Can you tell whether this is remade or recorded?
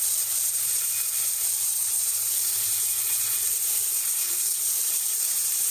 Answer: remade